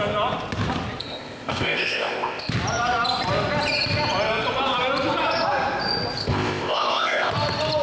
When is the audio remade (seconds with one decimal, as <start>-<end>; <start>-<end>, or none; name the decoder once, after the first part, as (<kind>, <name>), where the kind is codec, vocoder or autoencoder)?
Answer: 1.0-2.5 (codec, ZipCodec); 6.2-7.3